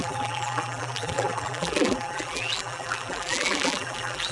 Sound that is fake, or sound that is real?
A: fake